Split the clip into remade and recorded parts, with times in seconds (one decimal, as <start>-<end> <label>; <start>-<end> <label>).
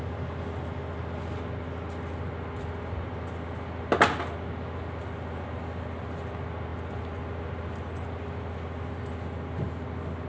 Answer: 0.0-10.3 recorded